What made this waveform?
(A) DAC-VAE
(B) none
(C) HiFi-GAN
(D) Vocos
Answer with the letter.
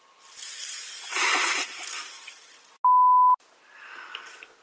B